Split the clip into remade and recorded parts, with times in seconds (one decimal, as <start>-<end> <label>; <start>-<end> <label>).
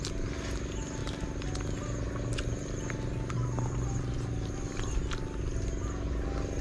0.0-6.6 recorded